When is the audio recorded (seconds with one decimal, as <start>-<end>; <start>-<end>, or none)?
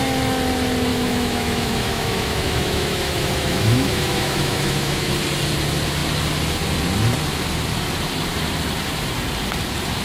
0.0-0.9; 5.1-10.0